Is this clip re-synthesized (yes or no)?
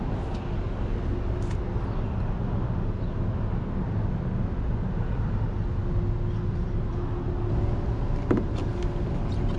no